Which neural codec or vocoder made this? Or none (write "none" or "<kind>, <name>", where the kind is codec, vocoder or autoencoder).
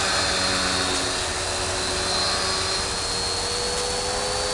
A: none